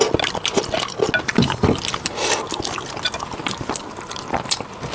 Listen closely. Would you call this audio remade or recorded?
recorded